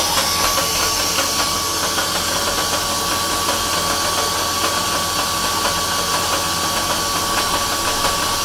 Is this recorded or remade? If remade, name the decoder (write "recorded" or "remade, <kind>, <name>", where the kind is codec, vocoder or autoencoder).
recorded